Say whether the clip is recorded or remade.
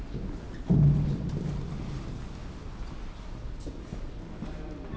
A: recorded